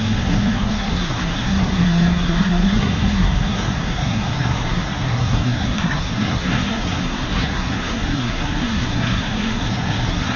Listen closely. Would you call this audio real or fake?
fake